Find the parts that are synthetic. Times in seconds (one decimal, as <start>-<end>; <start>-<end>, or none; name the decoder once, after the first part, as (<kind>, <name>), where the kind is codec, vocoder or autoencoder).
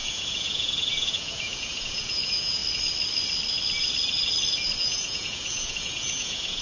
0.0-2.6 (vocoder, Vocos); 4.8-6.6